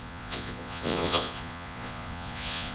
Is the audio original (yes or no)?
no